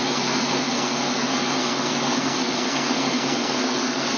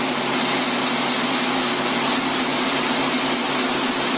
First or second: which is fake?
first